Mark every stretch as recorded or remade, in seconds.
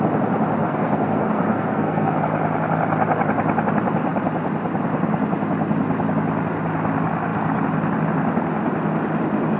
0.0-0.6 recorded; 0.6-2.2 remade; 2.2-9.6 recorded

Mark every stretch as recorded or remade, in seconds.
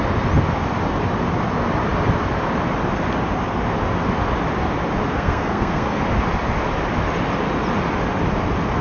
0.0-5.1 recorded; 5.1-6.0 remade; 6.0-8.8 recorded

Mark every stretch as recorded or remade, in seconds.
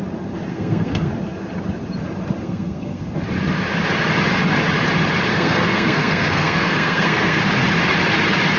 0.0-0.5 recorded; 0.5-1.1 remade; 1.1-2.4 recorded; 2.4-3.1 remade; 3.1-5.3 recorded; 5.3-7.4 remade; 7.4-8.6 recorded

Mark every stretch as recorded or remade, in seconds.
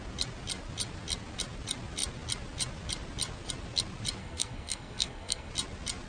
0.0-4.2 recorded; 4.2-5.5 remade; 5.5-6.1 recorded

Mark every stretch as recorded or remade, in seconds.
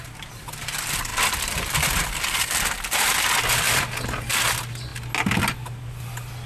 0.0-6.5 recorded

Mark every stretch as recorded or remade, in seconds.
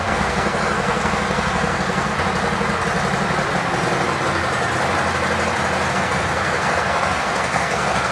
0.0-2.1 remade; 2.1-5.9 recorded; 5.9-8.1 remade